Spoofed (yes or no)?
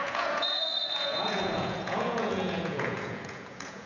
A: yes